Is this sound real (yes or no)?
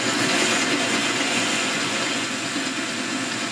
no